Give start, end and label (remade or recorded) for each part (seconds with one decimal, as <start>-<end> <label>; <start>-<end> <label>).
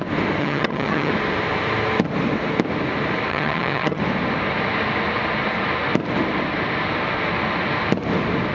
0.0-0.4 recorded; 0.4-1.1 remade; 1.1-3.3 recorded; 3.3-4.0 remade; 4.0-8.5 recorded